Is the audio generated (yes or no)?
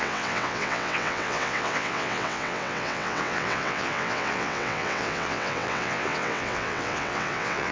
yes